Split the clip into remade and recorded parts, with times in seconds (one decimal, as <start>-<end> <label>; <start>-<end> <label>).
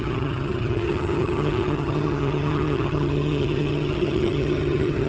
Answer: 0.0-5.1 remade